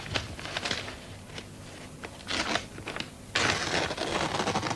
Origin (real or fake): real